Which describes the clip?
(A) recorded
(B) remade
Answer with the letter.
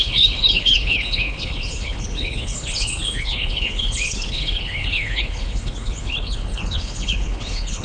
B